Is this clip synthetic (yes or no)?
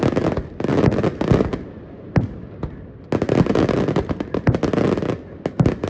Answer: no